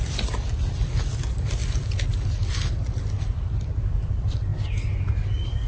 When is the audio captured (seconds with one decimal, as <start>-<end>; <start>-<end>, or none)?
0.0-5.7